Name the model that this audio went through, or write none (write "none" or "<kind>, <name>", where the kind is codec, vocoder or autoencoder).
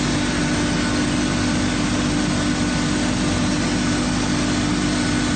none